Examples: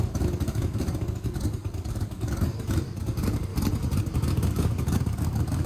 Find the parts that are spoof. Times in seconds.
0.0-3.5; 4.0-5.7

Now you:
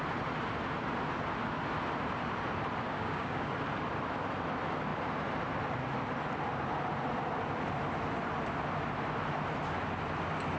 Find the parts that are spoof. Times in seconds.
2.9-3.5

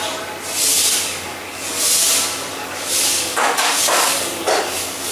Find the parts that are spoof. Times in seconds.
0.7-1.6; 2.5-5.1

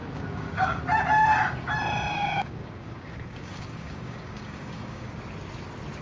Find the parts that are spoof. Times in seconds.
0.0-0.8; 2.1-5.1

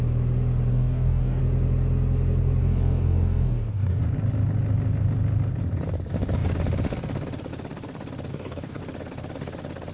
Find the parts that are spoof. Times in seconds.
0.7-1.4; 2.6-4.0; 8.3-8.8

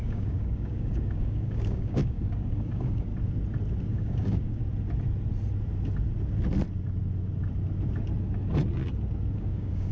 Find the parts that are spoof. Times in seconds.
0.0-3.1; 3.8-4.6; 9.3-9.9

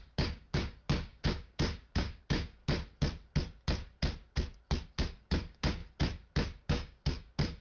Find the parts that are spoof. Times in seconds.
0.0-2.6; 4.9-5.8; 6.6-7.6

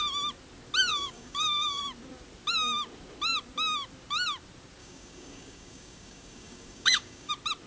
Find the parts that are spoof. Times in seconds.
0.9-1.8; 4.8-7.3